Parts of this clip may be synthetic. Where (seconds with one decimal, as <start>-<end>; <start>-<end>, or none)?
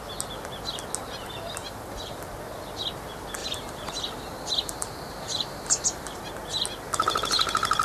1.6-2.3; 3.4-6.3